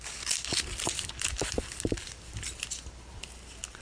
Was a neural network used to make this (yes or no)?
no